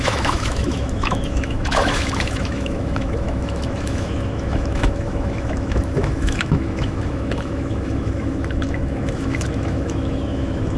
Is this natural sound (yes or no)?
no